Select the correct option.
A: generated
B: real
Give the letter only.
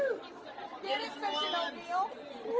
B